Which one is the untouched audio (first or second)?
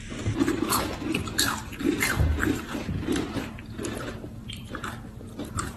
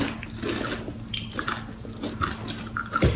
second